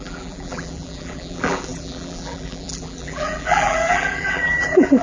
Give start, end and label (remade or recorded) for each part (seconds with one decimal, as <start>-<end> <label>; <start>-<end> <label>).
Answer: 0.0-5.0 remade